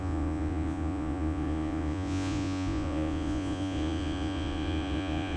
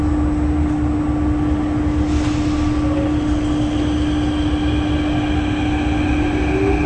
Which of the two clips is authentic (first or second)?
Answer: second